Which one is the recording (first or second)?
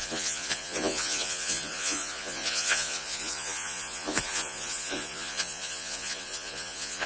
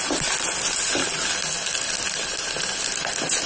second